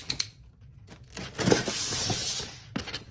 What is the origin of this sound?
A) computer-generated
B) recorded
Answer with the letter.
B